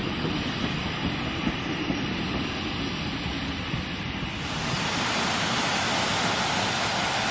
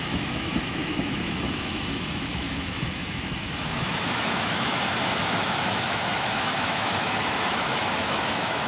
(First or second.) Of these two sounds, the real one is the first